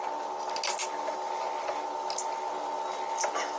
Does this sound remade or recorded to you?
recorded